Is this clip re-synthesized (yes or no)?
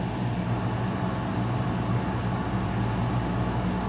no